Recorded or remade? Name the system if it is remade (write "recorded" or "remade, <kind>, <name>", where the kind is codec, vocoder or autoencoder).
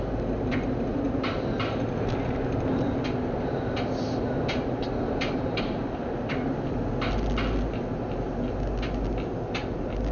recorded